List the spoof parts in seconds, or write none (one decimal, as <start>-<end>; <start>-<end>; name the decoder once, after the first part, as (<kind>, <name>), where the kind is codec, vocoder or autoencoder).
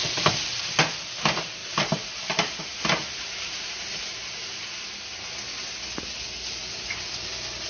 1.6-4.5 (vocoder, BigVGAN v2)